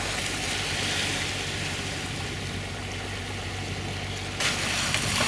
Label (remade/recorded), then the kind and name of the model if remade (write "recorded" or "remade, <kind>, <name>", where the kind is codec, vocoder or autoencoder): recorded